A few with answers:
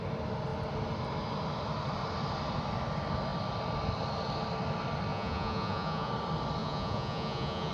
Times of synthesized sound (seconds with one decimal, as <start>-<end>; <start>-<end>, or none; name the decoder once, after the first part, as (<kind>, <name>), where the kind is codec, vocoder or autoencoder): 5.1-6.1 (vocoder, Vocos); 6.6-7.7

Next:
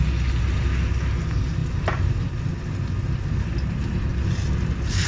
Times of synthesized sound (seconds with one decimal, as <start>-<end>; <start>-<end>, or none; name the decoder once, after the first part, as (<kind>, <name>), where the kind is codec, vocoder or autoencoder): none

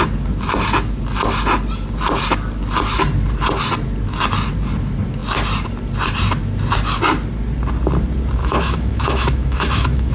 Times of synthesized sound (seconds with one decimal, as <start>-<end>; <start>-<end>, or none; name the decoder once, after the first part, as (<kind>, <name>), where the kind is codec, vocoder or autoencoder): 8.4-10.1 (autoencoder, DAC-VAE)